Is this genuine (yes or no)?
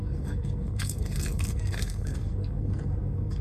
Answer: no